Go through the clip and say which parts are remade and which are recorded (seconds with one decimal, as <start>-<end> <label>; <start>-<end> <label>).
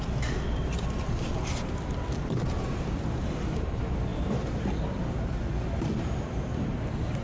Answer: 0.0-7.2 recorded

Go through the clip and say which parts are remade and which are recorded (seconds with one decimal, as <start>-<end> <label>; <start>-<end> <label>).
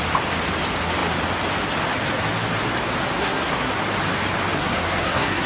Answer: 0.0-3.2 recorded; 3.2-3.7 remade; 3.7-4.6 recorded; 4.6-5.5 remade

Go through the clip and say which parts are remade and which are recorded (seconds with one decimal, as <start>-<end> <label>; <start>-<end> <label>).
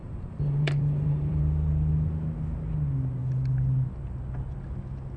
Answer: 0.0-1.4 remade; 1.4-5.2 recorded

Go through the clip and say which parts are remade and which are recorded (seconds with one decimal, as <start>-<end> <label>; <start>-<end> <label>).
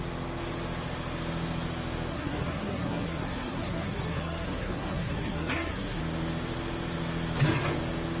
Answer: 0.0-2.1 recorded; 2.1-6.0 remade; 6.0-8.2 recorded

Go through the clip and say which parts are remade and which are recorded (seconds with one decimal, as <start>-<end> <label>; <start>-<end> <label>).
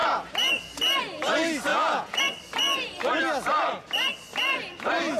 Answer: 0.0-1.7 recorded; 1.7-2.2 remade; 2.2-5.2 recorded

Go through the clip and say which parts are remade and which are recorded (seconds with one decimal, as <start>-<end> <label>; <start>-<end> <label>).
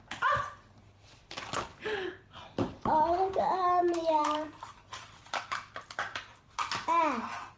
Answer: 0.0-3.8 recorded; 3.8-6.5 remade; 6.5-7.6 recorded